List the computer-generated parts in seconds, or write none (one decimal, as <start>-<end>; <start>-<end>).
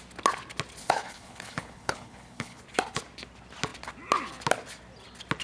0.8-2.6